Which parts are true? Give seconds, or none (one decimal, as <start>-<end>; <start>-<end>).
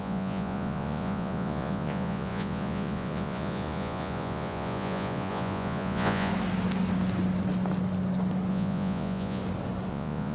6.3-8.5; 9.4-9.9